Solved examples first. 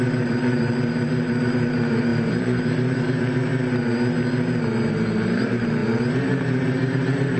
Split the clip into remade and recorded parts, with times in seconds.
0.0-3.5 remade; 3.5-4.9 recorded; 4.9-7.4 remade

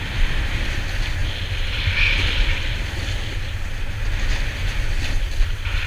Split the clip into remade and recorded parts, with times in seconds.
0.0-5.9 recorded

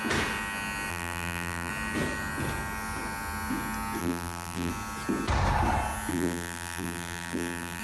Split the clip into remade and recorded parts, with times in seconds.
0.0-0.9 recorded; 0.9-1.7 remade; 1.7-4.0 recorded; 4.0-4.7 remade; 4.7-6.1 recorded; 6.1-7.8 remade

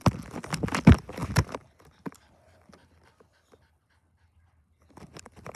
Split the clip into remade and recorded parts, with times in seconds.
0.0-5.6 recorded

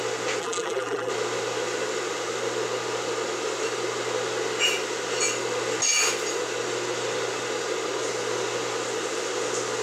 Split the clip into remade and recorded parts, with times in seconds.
0.0-0.4 recorded; 0.4-1.1 remade; 1.1-9.8 recorded

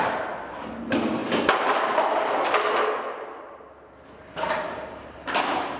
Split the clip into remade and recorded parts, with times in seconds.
0.0-1.2 remade; 1.2-4.7 recorded; 4.7-5.8 remade